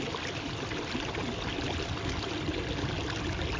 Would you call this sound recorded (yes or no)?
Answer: yes